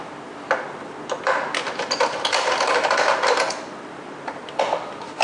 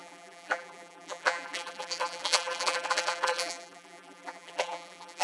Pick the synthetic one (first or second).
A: second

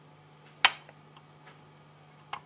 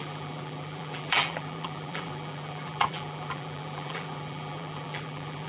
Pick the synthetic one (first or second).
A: second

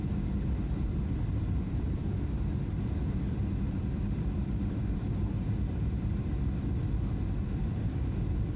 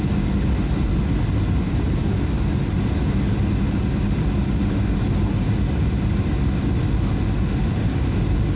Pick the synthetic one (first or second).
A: first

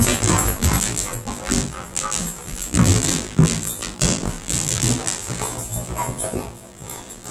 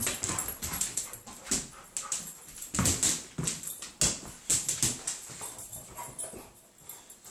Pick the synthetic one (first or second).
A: first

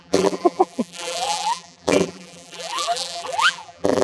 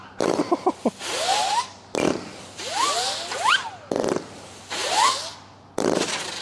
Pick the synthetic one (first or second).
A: first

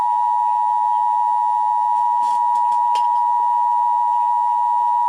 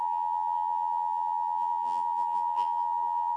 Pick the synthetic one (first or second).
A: second